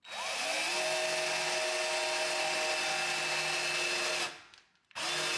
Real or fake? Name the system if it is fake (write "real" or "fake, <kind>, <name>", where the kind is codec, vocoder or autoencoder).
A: real